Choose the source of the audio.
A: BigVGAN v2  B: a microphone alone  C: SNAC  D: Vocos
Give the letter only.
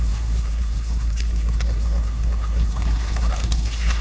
C